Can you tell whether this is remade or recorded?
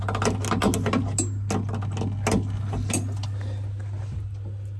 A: recorded